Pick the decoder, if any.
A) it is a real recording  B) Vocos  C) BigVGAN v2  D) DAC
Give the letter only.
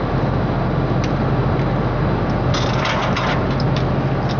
A